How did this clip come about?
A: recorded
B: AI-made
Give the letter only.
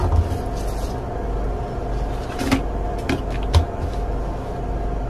A